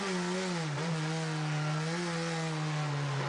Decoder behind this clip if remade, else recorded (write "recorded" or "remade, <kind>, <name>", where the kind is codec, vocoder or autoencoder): recorded